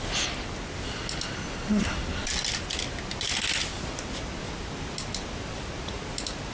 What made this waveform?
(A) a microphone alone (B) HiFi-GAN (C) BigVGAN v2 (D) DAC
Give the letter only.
A